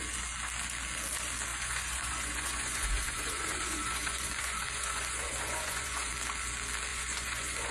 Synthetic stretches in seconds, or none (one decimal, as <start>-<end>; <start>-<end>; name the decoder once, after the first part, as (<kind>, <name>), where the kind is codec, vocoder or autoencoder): 1.5-6.1 (vocoder, Vocos); 6.9-7.7